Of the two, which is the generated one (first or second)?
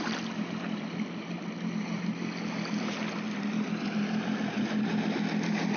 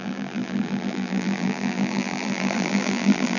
second